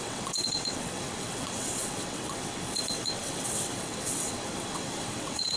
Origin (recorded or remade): remade